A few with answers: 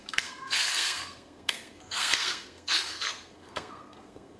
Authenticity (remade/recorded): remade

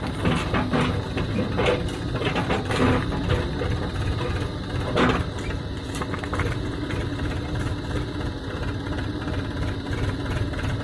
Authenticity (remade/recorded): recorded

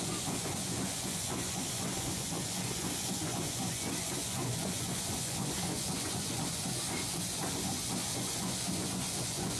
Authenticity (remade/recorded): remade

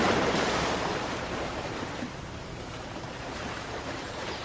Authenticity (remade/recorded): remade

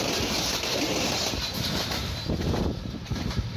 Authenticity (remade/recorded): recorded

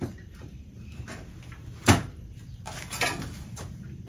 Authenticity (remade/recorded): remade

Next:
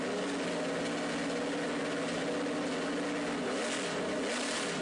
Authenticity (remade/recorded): recorded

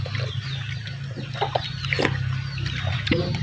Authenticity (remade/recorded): recorded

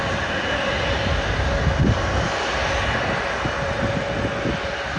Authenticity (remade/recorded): recorded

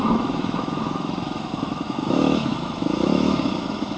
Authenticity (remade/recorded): remade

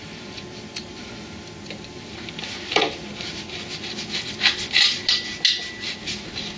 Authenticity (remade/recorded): recorded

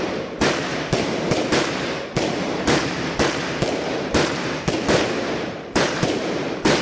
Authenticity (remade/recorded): remade